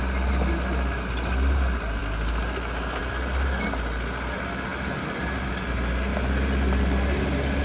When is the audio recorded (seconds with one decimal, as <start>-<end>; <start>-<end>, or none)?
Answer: 0.0-7.6